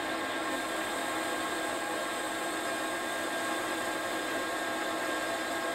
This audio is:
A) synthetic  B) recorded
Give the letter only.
B